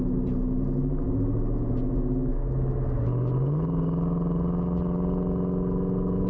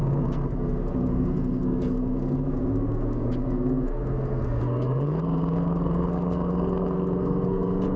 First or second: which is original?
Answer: first